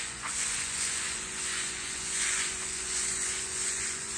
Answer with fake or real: fake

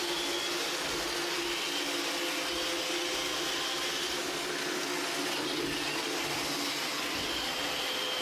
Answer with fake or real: real